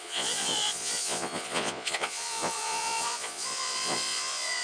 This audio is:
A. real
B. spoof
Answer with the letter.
B